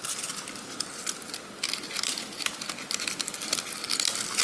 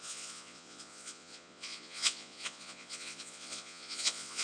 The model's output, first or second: second